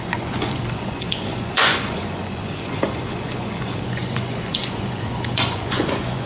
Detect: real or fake fake